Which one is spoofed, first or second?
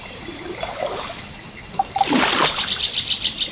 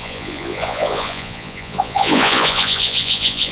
second